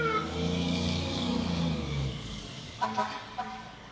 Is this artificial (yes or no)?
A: yes